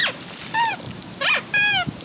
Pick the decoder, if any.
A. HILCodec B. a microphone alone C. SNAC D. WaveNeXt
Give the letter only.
B